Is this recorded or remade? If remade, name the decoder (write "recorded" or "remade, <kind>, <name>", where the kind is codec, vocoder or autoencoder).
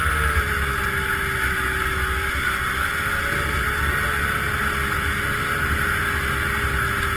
recorded